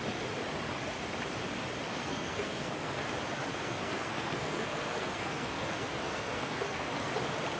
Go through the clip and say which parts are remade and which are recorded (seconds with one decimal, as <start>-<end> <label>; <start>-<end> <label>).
0.0-1.9 recorded; 1.9-3.0 remade; 3.0-3.5 recorded; 3.5-7.1 remade; 7.1-7.6 recorded